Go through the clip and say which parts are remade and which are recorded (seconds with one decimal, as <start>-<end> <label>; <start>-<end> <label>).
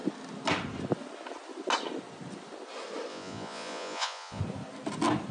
0.0-3.1 recorded; 3.1-4.4 remade; 4.4-5.3 recorded